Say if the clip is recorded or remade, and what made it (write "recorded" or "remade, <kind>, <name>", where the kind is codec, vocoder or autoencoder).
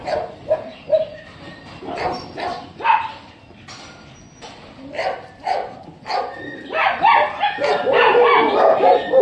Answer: recorded